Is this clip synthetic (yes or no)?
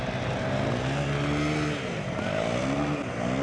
no